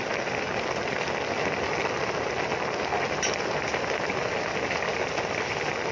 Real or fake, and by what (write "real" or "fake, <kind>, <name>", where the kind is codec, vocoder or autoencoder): real